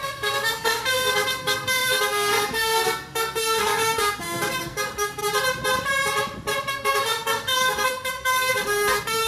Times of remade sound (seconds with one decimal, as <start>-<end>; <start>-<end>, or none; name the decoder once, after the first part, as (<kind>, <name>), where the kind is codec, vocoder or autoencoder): 0.0-5.2 (codec, SNAC); 6.7-9.3